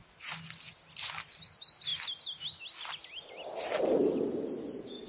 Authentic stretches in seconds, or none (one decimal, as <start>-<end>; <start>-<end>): 0.0-5.1